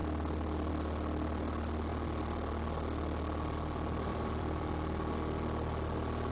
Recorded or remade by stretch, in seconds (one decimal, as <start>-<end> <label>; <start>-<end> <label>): 0.0-4.1 recorded; 4.1-4.7 remade; 4.7-6.3 recorded